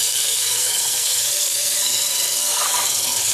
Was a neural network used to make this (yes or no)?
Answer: yes